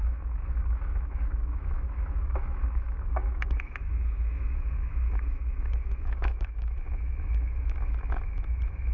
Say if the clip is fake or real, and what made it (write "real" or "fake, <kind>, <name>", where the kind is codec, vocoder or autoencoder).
fake, autoencoder, DAC-VAE